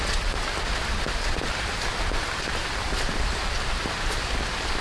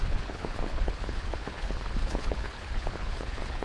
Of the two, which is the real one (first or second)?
first